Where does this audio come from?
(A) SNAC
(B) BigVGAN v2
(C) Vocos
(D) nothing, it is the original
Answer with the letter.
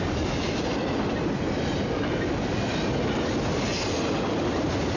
D